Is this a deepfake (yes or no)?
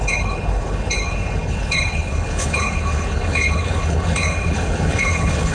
yes